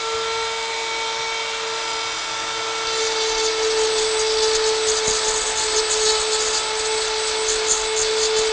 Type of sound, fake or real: real